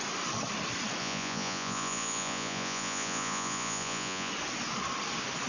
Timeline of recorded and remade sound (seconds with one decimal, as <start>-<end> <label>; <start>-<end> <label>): 0.0-1.0 recorded; 1.0-4.3 remade; 4.3-5.5 recorded